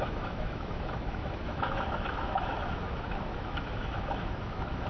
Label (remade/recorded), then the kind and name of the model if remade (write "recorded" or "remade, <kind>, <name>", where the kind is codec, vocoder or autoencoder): remade, autoencoder, DAC-VAE